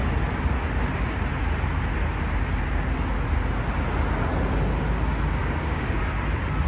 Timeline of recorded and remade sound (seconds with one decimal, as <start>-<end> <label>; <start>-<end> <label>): 0.0-5.4 recorded; 5.4-6.0 remade; 6.0-6.7 recorded

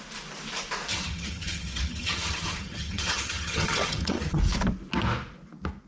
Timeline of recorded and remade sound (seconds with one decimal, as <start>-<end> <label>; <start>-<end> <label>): 0.0-0.9 recorded; 0.9-4.4 remade; 4.4-5.9 recorded

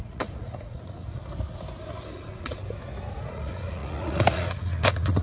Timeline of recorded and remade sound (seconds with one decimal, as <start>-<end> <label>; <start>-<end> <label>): 0.0-1.2 remade; 1.2-1.8 recorded; 1.8-2.6 remade; 2.6-3.2 recorded; 3.2-5.2 remade

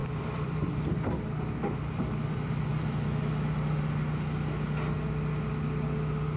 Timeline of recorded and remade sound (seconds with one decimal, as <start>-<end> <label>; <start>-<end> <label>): 0.0-3.8 remade; 3.8-6.4 recorded

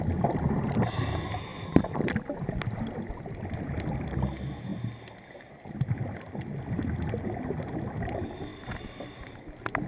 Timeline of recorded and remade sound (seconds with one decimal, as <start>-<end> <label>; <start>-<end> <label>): 0.0-9.9 recorded

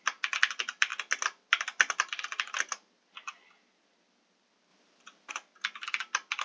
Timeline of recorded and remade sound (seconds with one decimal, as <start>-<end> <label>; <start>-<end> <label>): 0.0-4.7 recorded; 4.7-5.3 remade; 5.3-6.4 recorded

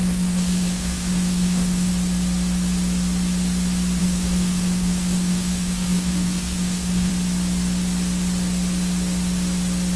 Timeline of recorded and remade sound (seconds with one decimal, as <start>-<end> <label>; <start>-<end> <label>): 0.0-1.9 remade; 1.9-4.0 recorded; 4.0-7.1 remade; 7.1-10.0 recorded

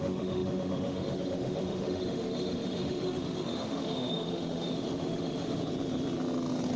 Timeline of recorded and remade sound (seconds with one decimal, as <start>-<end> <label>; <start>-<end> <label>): 0.0-5.6 remade; 5.6-6.8 recorded